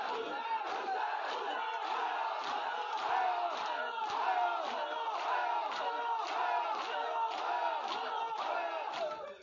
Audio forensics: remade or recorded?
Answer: recorded